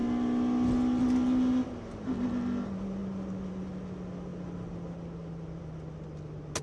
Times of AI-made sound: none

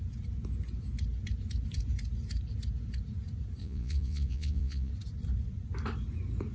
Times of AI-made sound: 3.6-4.9 (vocoder, Vocos)

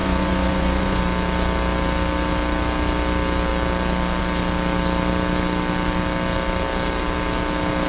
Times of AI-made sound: 0.0-1.0 (vocoder, Vocos)

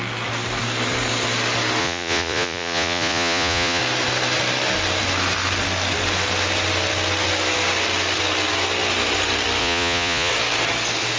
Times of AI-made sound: 1.8-3.8 (vocoder, Vocos); 9.6-10.3

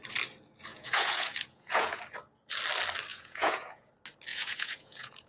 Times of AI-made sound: 0.7-2.0 (vocoder, Vocos); 3.1-3.9; 4.3-5.3